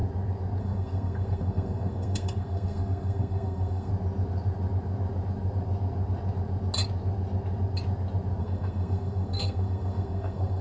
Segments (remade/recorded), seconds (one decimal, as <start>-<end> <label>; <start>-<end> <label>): 0.0-0.6 recorded; 0.6-3.9 remade; 3.9-8.4 recorded; 8.4-10.6 remade